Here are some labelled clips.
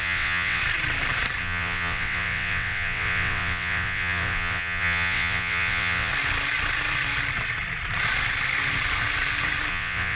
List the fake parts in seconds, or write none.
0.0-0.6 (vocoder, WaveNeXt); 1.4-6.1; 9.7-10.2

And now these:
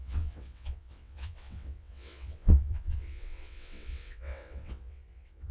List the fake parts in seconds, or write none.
0.0-5.5 (vocoder, WaveNeXt)

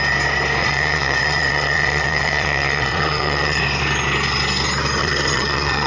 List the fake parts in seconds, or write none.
0.6-3.6 (vocoder, WaveNeXt); 5.0-5.9

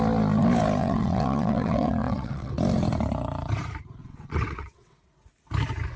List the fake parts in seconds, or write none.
0.8-2.5 (vocoder, WaveNeXt); 4.0-5.0

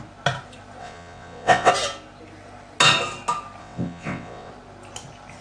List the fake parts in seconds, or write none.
0.8-1.7 (vocoder, WaveNeXt); 3.6-4.5

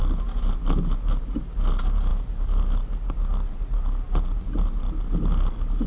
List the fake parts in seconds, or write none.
none

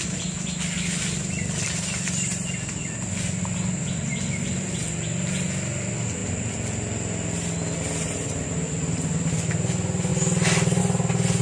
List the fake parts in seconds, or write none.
none